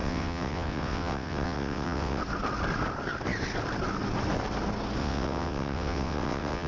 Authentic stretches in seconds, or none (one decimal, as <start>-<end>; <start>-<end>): 2.2-5.0